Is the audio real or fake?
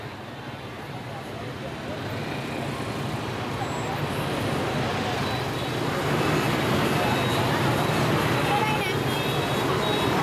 real